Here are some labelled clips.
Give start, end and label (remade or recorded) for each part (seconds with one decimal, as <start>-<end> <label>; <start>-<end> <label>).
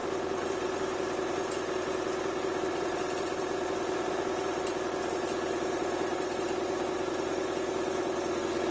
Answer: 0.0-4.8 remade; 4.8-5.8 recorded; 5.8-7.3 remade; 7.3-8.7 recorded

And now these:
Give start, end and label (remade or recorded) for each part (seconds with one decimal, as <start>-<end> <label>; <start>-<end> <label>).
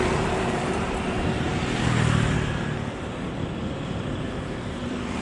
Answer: 0.0-1.5 remade; 1.5-3.9 recorded; 3.9-5.2 remade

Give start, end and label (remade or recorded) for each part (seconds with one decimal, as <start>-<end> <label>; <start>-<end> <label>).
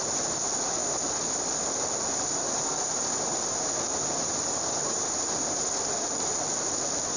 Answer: 0.0-0.8 recorded; 0.8-5.1 remade; 5.1-7.2 recorded